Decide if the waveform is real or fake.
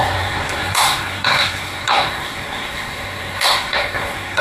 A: fake